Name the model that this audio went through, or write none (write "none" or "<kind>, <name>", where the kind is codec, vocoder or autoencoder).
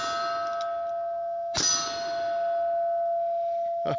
none